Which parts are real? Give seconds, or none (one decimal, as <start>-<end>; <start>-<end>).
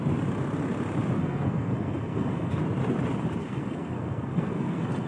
0.0-1.2; 2.5-3.4